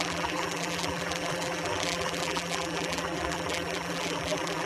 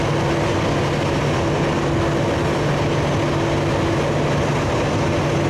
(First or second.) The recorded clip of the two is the second